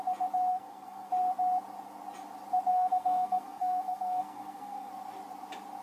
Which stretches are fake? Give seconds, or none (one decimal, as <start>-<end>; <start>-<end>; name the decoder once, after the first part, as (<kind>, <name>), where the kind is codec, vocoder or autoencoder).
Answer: 0.5-1.1 (codec, SNAC); 2.7-4.9

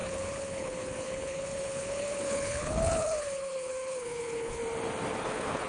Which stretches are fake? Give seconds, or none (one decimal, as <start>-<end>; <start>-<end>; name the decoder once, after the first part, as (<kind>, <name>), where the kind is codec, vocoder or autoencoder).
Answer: 0.0-4.6 (codec, HILCodec); 5.2-5.7